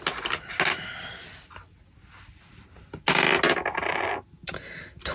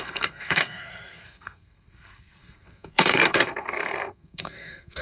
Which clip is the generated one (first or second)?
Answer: second